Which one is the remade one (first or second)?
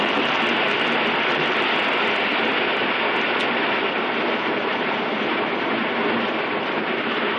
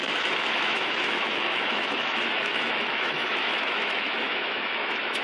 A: second